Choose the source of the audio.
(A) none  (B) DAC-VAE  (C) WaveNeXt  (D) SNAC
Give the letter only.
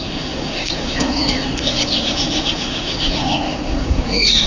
D